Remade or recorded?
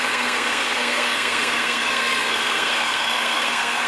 remade